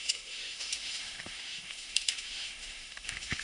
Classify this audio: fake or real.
fake